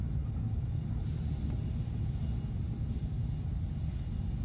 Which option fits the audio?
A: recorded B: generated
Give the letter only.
A